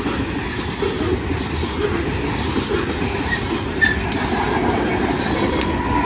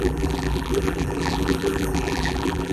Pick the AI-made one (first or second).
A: second